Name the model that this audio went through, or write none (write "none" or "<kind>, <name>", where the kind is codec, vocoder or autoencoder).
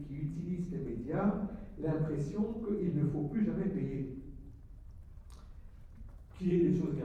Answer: vocoder, BigVGAN v2